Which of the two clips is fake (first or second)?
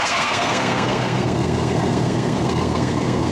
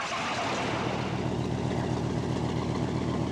first